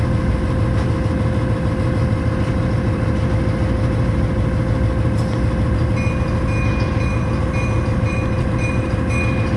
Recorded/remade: recorded